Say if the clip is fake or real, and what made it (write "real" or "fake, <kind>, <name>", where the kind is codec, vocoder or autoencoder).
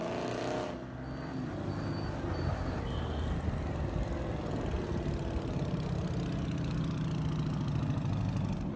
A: real